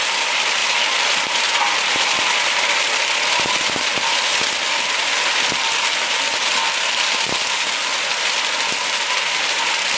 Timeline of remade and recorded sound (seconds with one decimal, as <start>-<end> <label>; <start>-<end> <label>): 0.0-10.0 recorded

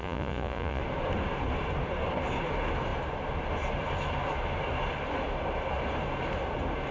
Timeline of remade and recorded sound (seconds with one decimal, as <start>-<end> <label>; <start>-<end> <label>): 0.0-0.8 remade; 0.8-6.9 recorded

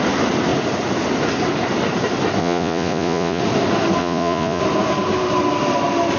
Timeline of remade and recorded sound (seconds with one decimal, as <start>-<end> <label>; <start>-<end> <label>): 0.0-2.4 recorded; 2.4-3.4 remade; 3.4-4.0 recorded; 4.0-4.6 remade; 4.6-6.2 recorded

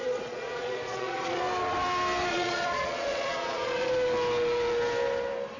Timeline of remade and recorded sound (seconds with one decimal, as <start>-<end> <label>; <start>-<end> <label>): 0.0-1.4 remade; 1.4-2.3 recorded; 2.3-3.9 remade; 3.9-5.6 recorded

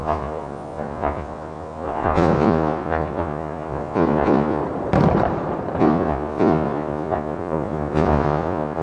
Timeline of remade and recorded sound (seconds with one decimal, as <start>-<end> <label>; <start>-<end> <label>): 0.0-4.6 remade; 4.6-5.8 recorded; 5.8-8.8 remade

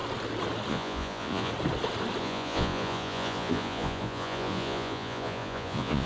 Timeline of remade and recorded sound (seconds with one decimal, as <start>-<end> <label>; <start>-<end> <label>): 0.0-0.7 recorded; 0.7-1.5 remade; 1.5-2.2 recorded; 2.2-6.1 remade

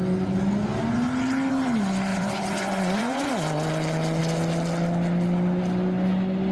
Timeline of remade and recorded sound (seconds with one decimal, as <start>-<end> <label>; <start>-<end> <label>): 0.0-2.1 recorded; 2.1-3.3 remade; 3.3-6.5 recorded

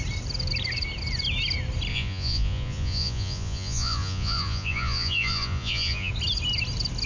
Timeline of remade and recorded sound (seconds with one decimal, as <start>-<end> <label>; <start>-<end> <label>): 0.0-1.9 recorded; 1.9-6.1 remade; 6.1-7.1 recorded